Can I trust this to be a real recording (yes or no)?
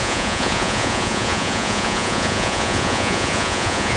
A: no